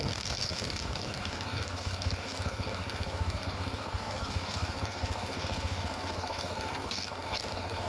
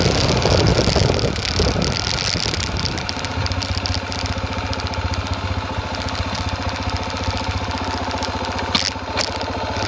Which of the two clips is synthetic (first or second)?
first